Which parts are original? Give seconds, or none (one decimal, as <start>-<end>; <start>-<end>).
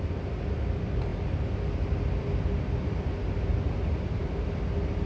0.0-5.1